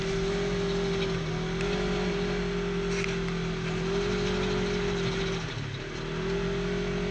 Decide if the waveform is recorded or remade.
recorded